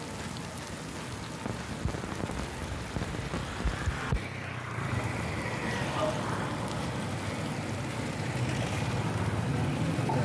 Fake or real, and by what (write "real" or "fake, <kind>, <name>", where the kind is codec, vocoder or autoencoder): real